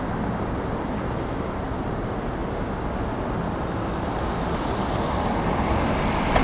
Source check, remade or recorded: recorded